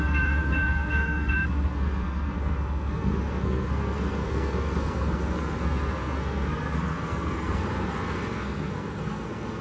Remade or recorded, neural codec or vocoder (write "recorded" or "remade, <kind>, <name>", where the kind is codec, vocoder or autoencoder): remade, codec, SNAC